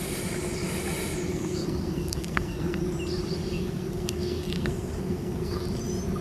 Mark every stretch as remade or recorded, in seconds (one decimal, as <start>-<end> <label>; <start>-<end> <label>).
0.0-1.3 recorded; 1.3-2.8 remade; 2.8-3.5 recorded; 3.5-5.6 remade; 5.6-6.2 recorded